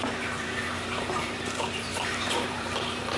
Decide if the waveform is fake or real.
fake